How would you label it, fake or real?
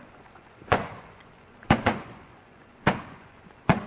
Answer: fake